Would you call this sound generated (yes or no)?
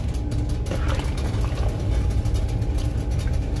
no